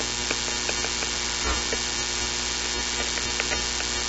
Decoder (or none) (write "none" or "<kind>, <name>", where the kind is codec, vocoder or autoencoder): none